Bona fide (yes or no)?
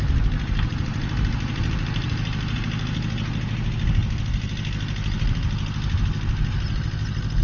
yes